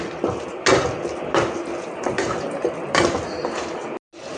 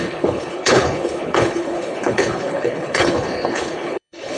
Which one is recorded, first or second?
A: first